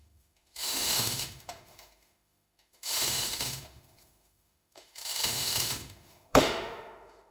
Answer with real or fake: fake